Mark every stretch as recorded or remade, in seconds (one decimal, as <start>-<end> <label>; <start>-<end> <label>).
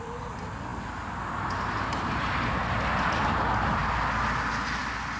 0.0-5.2 recorded